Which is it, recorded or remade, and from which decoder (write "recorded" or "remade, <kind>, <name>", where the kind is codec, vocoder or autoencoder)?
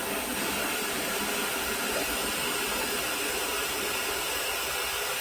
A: recorded